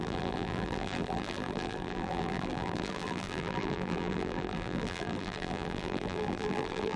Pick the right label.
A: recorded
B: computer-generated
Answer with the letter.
B